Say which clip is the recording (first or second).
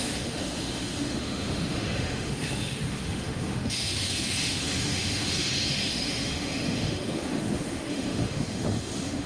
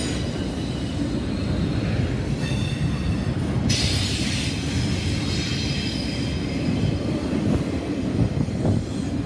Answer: second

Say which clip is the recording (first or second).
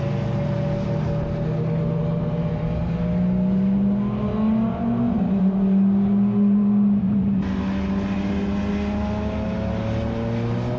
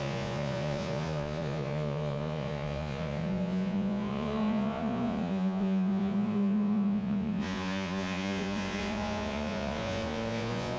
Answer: first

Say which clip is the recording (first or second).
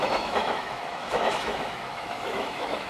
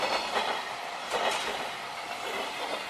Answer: second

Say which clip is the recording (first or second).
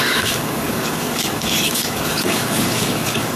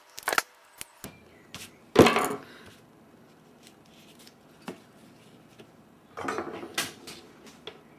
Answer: second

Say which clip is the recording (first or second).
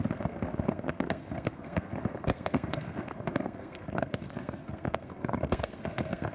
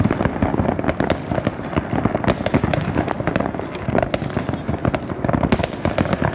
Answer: second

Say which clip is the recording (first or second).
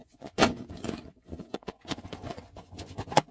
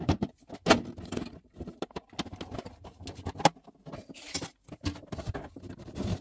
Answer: second